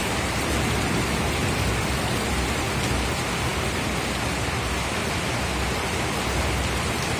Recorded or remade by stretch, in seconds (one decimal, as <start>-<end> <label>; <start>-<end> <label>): 0.0-7.2 recorded